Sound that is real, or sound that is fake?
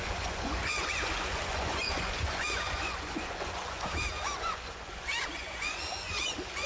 fake